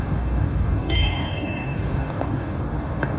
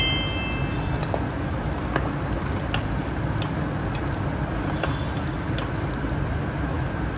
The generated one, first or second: first